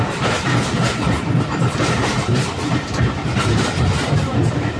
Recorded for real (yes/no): no